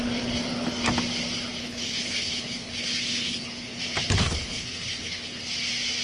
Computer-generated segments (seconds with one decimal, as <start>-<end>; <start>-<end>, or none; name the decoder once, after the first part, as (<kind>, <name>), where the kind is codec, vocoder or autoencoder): 1.6-3.8 (codec, HILCodec); 4.2-5.4